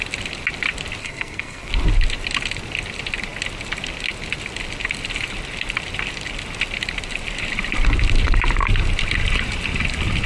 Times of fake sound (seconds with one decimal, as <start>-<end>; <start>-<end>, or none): 1.0-1.7